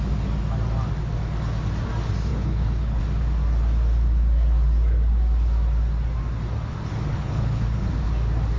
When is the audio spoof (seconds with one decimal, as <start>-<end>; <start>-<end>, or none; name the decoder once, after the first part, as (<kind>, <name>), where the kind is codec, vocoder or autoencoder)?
2.3-3.0 (codec, HILCodec); 7.1-7.9

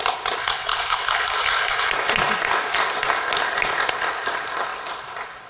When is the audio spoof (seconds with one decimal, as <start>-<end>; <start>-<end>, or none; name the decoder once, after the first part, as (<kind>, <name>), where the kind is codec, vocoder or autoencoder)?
0.4-1.9 (codec, HILCodec)

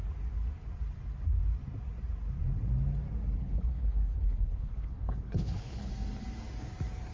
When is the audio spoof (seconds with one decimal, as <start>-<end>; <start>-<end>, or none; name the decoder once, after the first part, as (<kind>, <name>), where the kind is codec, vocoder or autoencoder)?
3.4-5.9 (codec, HILCodec)

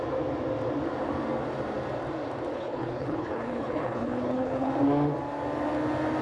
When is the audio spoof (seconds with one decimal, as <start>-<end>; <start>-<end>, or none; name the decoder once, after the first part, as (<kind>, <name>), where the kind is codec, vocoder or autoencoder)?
2.5-4.7 (codec, HILCodec)

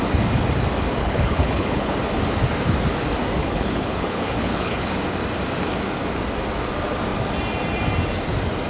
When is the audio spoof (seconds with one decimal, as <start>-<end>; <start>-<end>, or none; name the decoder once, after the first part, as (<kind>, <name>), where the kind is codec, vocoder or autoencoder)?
1.0-1.9 (codec, HILCodec); 3.4-4.9

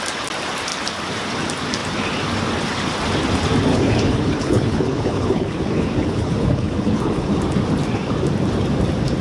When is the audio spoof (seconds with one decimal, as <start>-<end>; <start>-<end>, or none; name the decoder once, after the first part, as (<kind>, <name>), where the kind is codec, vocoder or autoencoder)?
3.7-7.4 (codec, HILCodec)

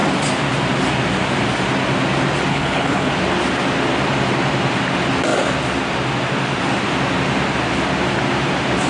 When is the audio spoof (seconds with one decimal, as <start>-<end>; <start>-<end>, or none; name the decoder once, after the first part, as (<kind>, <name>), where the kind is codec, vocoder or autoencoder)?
2.5-3.1 (codec, HILCodec)